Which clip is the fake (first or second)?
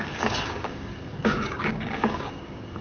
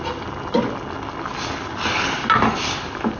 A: first